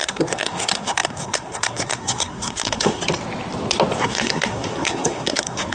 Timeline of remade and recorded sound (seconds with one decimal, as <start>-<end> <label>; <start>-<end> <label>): 0.0-3.0 remade; 3.0-4.0 recorded; 4.0-5.7 remade